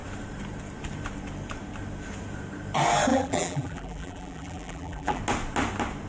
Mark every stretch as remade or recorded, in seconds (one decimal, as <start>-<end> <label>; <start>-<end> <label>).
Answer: 0.0-3.1 recorded; 3.1-5.2 remade; 5.2-6.1 recorded